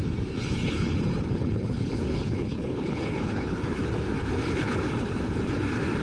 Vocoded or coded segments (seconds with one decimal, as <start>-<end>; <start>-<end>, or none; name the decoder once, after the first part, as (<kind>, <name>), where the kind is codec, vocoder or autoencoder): 0.4-3.9 (codec, HILCodec); 4.4-5.2